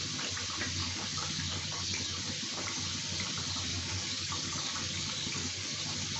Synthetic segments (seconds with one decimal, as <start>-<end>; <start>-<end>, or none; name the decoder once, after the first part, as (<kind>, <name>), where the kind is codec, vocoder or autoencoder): 0.8-2.2 (codec, DAC); 3.7-5.8